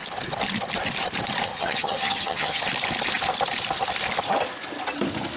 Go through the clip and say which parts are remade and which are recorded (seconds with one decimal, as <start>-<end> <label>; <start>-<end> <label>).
0.0-1.5 recorded; 1.5-2.6 remade; 2.6-5.4 recorded